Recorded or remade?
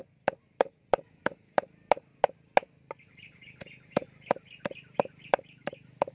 recorded